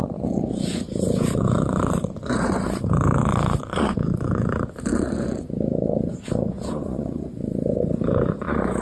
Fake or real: fake